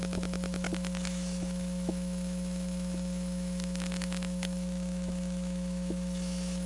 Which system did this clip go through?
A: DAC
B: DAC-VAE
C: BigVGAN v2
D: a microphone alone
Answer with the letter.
B